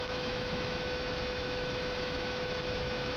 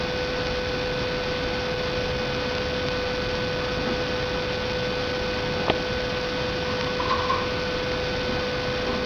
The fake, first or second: first